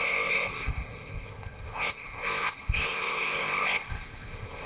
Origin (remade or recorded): remade